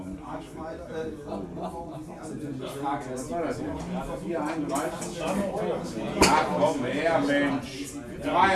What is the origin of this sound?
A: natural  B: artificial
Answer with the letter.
A